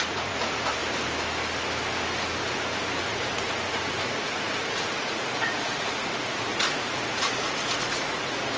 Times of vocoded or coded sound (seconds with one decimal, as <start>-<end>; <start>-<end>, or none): 0.0-0.8; 3.0-8.6